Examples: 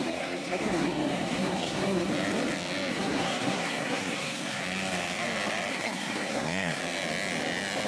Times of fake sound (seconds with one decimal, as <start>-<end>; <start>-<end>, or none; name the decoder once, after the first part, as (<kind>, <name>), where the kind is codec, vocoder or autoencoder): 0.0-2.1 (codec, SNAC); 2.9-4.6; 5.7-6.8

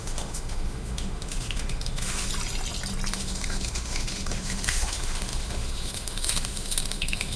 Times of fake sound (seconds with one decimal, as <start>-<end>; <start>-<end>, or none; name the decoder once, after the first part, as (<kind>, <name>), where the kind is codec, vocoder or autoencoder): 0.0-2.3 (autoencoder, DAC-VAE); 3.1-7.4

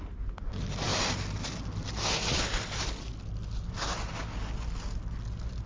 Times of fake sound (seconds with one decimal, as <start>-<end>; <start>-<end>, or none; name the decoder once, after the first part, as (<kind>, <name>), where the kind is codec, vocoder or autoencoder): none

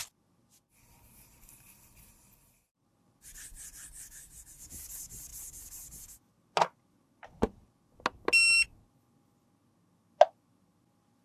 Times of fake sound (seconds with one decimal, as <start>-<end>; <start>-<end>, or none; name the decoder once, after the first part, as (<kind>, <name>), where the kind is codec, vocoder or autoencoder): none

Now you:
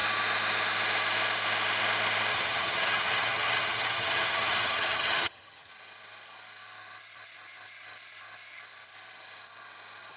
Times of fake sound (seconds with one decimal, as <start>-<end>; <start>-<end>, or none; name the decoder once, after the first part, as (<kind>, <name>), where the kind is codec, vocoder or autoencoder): 2.3-5.7 (vocoder, HiFi-GAN)